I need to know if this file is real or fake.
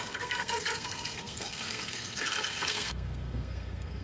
fake